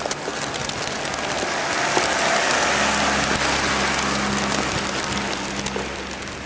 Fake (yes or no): no